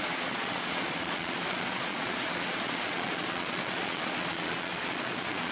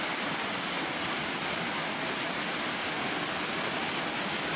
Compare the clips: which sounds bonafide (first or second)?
second